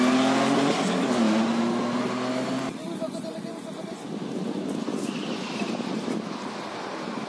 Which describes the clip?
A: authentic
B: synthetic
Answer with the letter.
A